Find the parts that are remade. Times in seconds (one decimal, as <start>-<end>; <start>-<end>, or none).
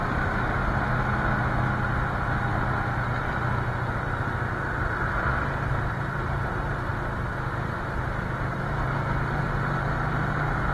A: 0.0-0.6; 5.7-6.9; 9.3-10.7